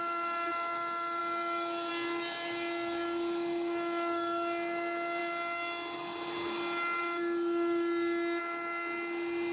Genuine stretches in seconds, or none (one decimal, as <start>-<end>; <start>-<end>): 0.0-9.5